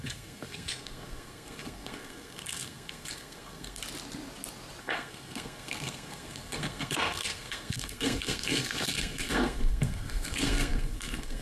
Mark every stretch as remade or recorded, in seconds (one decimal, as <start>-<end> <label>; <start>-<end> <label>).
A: 0.0-3.8 remade; 3.8-4.8 recorded; 4.8-11.4 remade